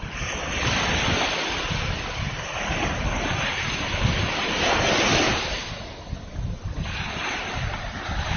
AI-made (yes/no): no